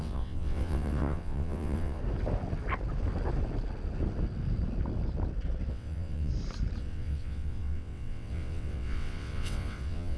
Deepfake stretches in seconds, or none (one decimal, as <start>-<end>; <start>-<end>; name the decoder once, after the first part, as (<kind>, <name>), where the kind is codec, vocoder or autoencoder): 0.0-2.0 (vocoder, WaveNeXt); 5.7-6.3; 6.8-10.2